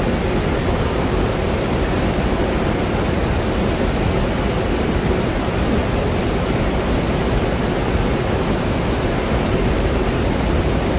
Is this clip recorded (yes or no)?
yes